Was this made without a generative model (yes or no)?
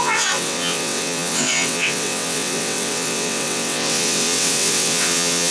no